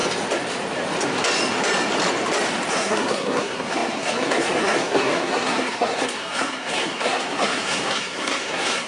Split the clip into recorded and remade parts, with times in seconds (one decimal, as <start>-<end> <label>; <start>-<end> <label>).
0.0-2.7 recorded; 2.7-8.9 remade